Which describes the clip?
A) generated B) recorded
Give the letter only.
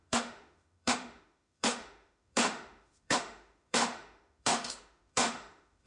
A